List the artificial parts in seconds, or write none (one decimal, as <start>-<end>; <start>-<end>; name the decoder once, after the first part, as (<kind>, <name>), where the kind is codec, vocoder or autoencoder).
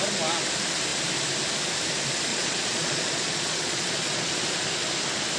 2.3-4.3 (vocoder, Vocos)